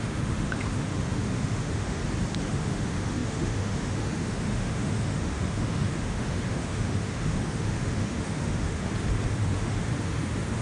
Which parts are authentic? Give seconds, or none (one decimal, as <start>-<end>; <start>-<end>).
2.0-2.5; 8.9-9.4

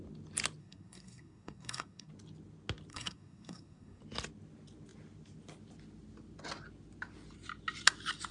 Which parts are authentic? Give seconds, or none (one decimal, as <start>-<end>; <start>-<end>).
0.0-0.6; 2.1-2.9; 4.0-8.3